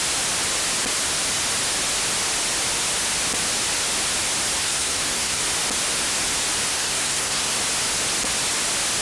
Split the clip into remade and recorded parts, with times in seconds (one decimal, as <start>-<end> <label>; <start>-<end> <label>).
0.0-4.6 recorded; 4.6-5.4 remade; 5.4-6.7 recorded; 6.7-7.6 remade; 7.6-9.0 recorded